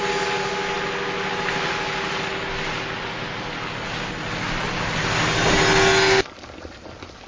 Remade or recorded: recorded